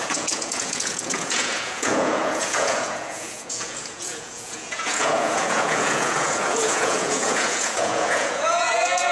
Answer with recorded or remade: remade